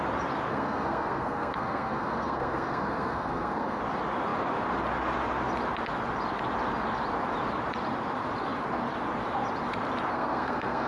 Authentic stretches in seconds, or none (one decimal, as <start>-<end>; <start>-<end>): 0.0-0.5; 3.8-10.1